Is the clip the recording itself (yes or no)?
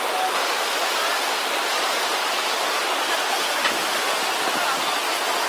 yes